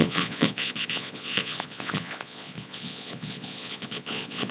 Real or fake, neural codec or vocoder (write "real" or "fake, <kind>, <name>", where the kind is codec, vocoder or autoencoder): fake, vocoder, Vocos